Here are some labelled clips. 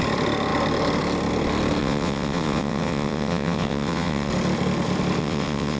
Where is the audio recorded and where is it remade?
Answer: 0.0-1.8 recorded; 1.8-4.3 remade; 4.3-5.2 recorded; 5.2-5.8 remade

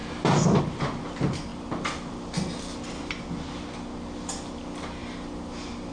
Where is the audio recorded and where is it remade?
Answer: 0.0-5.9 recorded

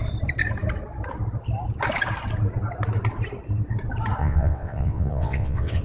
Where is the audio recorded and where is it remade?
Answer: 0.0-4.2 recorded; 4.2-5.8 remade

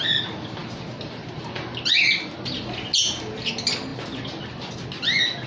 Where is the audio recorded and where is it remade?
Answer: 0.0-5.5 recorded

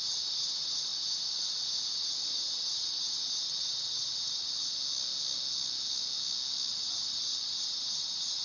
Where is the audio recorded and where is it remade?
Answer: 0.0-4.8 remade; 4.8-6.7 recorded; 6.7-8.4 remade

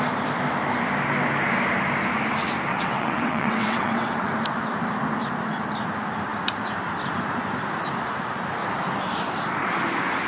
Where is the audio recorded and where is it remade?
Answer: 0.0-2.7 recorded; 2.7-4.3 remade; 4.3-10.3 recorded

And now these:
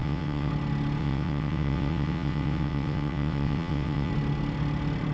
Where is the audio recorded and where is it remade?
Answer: 0.0-0.5 remade; 0.5-1.0 recorded; 1.0-4.1 remade; 4.1-5.1 recorded

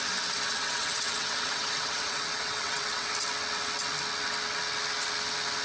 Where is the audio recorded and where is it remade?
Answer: 0.0-0.5 recorded; 0.5-3.1 remade; 3.1-5.6 recorded